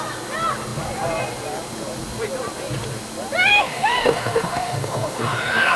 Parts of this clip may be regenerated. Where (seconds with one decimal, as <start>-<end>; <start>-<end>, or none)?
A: 3.5-5.8